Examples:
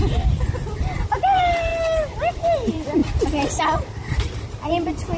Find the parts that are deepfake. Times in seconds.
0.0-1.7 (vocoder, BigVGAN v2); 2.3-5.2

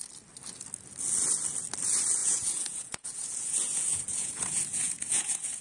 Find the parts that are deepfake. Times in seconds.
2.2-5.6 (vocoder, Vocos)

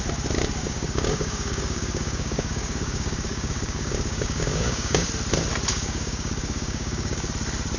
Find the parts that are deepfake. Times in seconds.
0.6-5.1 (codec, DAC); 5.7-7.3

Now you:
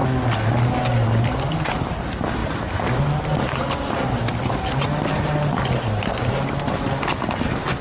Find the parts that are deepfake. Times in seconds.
none

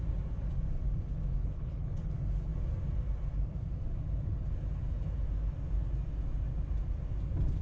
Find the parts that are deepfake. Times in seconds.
1.4-2.1 (codec, HILCodec)

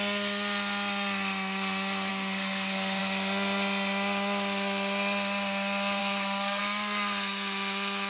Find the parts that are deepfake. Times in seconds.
2.1-3.0 (codec, SNAC); 6.0-6.6